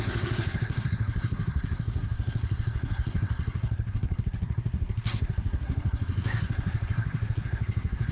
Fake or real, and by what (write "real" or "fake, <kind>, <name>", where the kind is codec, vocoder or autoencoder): fake, codec, SNAC